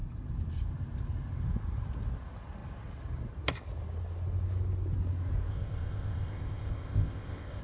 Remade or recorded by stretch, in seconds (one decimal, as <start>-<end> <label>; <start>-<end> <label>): 0.0-5.5 recorded; 5.5-7.6 remade